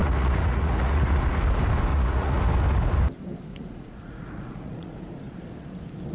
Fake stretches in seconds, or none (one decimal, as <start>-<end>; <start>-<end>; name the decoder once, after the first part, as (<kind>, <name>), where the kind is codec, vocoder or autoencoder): 0.0-1.2 (vocoder, Vocos); 1.9-2.4; 3.5-5.1